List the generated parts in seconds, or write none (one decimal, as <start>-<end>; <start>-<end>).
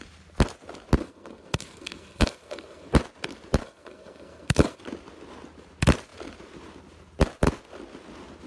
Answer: 1.0-2.9; 3.6-4.8